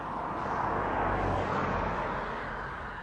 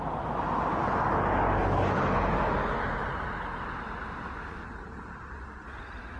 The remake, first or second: first